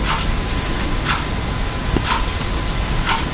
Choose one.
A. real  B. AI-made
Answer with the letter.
A